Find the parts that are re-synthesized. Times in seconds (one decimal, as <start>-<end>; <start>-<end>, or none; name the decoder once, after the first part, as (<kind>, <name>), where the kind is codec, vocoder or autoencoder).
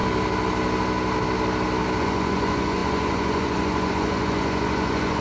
2.0-5.2 (vocoder, Vocos)